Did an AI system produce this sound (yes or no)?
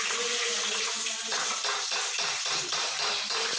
yes